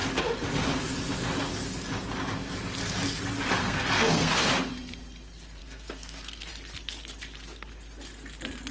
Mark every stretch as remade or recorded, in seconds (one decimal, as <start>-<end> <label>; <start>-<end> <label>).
0.0-3.6 recorded; 3.6-4.3 remade; 4.3-5.6 recorded; 5.6-6.5 remade; 6.5-8.7 recorded